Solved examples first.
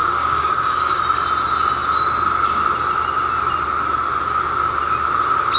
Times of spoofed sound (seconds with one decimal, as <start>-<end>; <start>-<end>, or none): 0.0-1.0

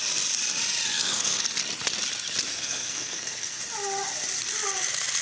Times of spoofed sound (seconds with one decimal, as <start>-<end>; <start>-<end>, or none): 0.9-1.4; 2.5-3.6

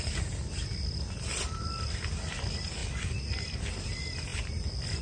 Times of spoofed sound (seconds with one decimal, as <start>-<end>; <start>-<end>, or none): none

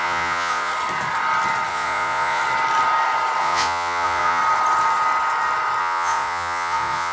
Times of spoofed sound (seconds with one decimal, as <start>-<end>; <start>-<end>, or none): 0.0-0.7; 1.7-2.4; 3.4-4.4; 5.8-7.1

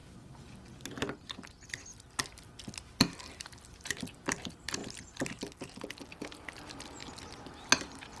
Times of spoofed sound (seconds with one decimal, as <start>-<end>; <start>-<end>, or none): 1.2-1.9; 3.3-4.8; 5.8-7.0; 7.6-8.2